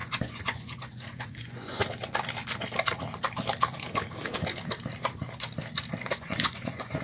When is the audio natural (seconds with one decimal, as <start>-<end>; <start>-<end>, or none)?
1.8-6.0